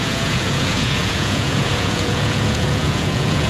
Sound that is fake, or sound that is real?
fake